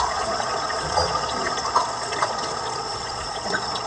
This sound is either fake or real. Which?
fake